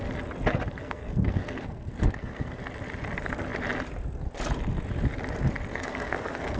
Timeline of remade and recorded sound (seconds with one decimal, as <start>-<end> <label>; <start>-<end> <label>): 0.0-0.8 recorded; 0.8-2.6 remade; 2.6-5.7 recorded; 5.7-6.6 remade